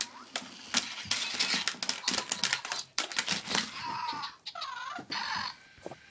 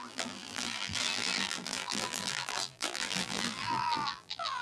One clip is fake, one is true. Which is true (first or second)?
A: first